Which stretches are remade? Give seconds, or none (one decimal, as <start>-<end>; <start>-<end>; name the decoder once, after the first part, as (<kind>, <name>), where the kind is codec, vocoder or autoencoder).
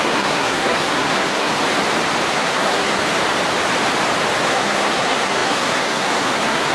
0.0-1.5 (codec, SNAC); 2.3-3.0; 4.5-6.7